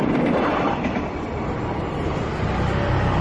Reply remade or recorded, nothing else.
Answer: recorded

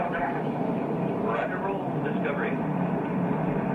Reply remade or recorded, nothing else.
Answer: remade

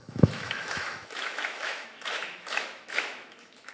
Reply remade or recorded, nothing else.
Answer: remade